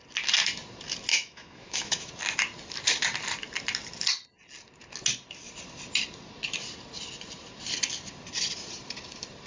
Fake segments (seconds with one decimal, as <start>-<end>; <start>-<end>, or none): 1.1-2.1